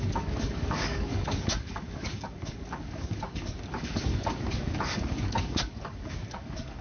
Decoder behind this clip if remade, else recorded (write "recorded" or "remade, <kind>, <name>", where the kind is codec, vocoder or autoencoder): remade, codec, DAC